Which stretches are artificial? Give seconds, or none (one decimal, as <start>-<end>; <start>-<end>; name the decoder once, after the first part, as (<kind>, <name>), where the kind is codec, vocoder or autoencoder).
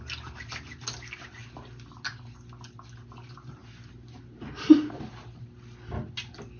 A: none